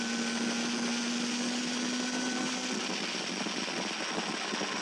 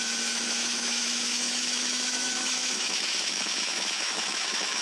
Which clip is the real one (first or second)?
first